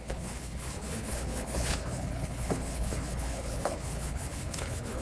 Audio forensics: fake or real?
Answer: fake